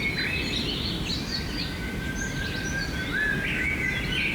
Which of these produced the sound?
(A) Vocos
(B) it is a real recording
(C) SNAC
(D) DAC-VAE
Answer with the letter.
B